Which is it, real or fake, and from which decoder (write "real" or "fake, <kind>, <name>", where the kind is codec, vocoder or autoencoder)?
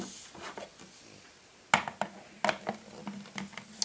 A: real